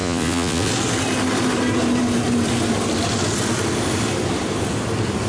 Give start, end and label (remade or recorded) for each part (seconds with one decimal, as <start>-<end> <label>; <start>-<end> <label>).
0.0-0.7 remade; 0.7-5.3 recorded